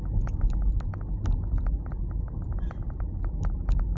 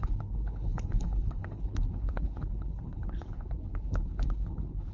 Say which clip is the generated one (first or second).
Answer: second